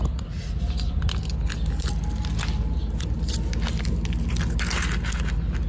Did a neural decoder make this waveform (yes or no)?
no